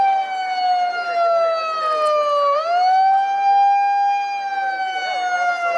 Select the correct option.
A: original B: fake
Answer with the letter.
A